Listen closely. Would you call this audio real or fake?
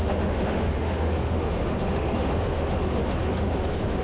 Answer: fake